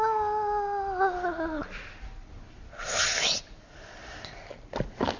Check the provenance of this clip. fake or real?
real